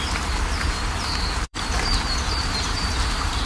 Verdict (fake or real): fake